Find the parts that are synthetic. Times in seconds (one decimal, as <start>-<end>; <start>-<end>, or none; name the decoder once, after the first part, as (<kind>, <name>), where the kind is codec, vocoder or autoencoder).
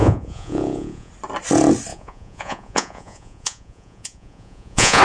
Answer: 0.0-1.1 (vocoder, Vocos); 1.9-5.0